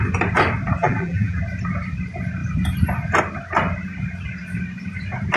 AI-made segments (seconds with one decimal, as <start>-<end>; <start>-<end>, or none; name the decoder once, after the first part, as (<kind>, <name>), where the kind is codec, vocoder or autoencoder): 0.8-1.4 (vocoder, BigVGAN v2)